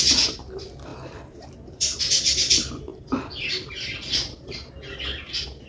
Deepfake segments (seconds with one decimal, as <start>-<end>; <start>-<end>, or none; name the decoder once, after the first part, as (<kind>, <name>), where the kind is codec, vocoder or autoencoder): 0.9-2.0 (vocoder, BigVGAN v2); 2.9-4.7